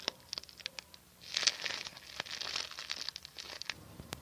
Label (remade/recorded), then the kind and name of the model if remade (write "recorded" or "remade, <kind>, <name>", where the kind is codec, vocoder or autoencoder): recorded